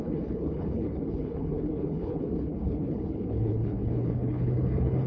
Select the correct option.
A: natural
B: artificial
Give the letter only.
B